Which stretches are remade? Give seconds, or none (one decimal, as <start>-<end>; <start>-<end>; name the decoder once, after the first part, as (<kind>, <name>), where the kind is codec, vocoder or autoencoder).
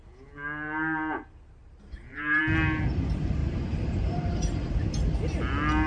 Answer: 1.6-2.4 (vocoder, BigVGAN v2); 3.4-4.7